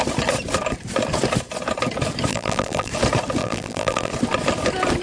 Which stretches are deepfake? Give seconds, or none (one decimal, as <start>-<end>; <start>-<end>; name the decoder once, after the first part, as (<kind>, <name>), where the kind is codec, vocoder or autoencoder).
2.3-2.9 (vocoder, BigVGAN v2); 3.4-4.1